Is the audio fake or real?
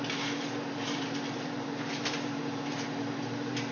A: fake